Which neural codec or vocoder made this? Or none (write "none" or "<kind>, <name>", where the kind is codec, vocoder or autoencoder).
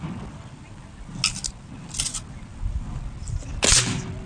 none